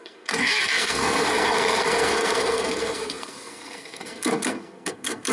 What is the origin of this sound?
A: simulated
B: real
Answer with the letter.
A